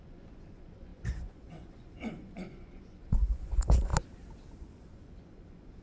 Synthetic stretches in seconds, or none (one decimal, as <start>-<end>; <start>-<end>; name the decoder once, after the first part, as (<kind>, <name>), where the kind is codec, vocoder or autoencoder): 0.0-3.9 (vocoder, Vocos); 4.5-5.8